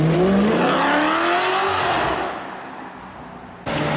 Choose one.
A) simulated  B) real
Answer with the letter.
B